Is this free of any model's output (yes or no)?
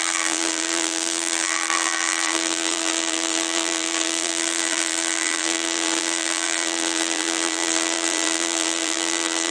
no